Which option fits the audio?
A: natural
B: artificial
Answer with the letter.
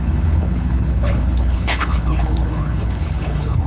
B